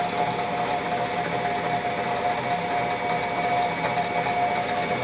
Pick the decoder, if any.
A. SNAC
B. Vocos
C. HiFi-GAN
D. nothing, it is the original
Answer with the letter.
D